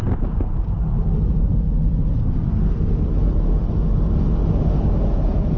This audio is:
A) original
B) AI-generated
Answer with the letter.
A